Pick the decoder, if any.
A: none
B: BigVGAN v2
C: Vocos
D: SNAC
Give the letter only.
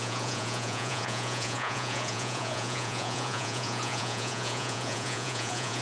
C